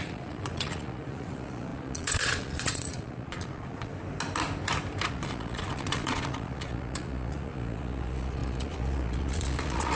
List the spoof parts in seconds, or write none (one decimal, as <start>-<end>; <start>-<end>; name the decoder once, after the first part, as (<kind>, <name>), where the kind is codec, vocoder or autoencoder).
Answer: 0.0-3.9 (vocoder, Vocos); 5.1-10.0